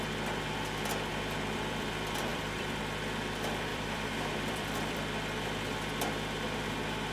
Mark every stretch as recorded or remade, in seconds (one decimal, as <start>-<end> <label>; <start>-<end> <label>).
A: 0.0-1.1 recorded; 1.1-1.9 remade; 1.9-2.3 recorded; 2.3-2.8 remade; 2.8-3.7 recorded; 3.7-5.0 remade; 5.0-7.1 recorded